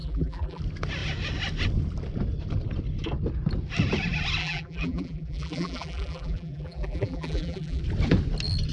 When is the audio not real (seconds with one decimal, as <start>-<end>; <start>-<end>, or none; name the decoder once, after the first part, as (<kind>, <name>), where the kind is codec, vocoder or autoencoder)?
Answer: 0.0-0.6 (vocoder, BigVGAN v2); 4.4-7.8

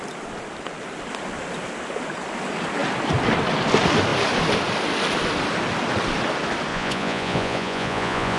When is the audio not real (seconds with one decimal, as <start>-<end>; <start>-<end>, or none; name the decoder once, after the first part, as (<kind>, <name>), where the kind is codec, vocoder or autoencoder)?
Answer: 6.7-8.4 (vocoder, Vocos)

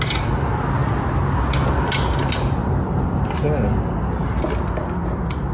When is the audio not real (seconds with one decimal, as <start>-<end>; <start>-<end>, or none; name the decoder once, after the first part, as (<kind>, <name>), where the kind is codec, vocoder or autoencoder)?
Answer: none

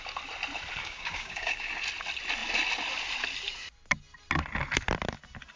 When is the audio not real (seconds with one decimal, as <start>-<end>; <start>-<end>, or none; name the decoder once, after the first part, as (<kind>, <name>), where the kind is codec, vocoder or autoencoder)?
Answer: 0.8-1.7 (codec, DAC)

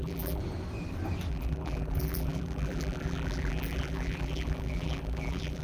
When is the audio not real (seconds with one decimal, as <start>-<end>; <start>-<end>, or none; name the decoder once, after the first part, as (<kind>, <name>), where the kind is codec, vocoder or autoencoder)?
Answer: 0.0-0.4 (vocoder, BigVGAN v2); 1.3-5.6

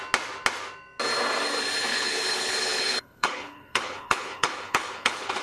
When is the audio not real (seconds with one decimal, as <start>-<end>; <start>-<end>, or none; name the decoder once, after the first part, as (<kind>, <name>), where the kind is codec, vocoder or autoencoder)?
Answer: 1.9-5.4 (codec, HILCodec)